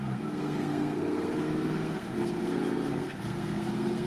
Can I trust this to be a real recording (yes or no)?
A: no